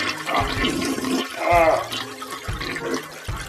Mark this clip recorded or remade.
recorded